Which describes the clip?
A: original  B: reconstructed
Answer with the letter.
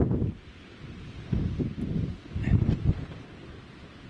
A